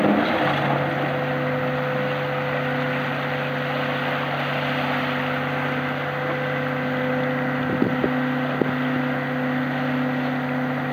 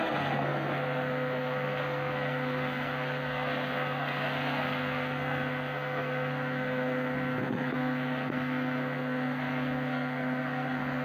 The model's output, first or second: second